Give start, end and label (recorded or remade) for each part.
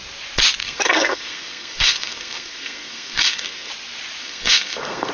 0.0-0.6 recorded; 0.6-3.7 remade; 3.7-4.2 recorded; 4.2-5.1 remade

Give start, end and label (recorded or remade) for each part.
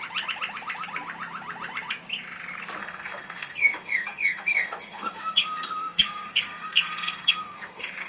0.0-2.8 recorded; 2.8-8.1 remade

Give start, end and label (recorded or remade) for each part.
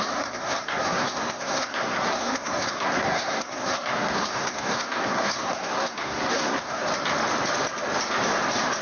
0.0-6.8 remade; 6.8-8.8 recorded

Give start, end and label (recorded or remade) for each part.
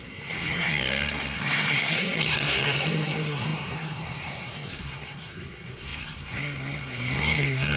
0.0-7.8 remade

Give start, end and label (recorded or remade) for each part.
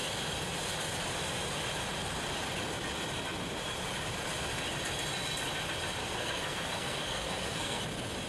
0.0-6.0 recorded; 6.0-7.8 remade; 7.8-8.3 recorded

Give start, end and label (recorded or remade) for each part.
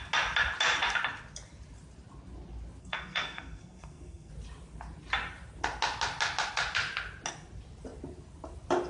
0.0-2.8 recorded; 2.8-4.3 remade; 4.3-8.9 recorded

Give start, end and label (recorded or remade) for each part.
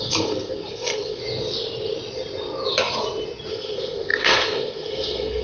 0.0-1.2 remade; 1.2-3.5 recorded; 3.5-5.4 remade